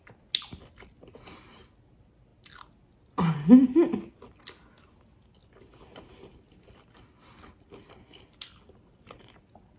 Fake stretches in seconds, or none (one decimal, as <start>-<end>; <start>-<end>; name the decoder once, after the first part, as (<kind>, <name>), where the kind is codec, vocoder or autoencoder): none